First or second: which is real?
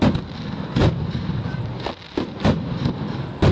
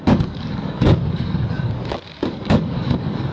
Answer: first